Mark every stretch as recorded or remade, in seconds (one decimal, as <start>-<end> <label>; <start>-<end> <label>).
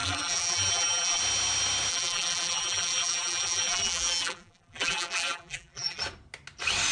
0.0-1.2 remade; 1.2-1.9 recorded; 1.9-6.0 remade; 6.0-6.9 recorded